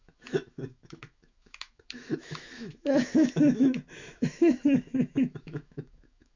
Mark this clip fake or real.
fake